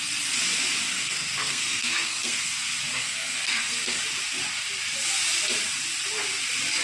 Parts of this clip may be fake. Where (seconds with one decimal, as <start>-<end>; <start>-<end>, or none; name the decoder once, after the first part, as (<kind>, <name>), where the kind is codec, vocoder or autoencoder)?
0.9-2.5 (codec, SNAC); 3.0-4.0